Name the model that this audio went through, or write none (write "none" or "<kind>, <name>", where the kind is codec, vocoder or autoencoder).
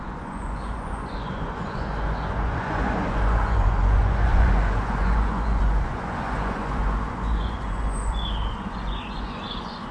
vocoder, Vocos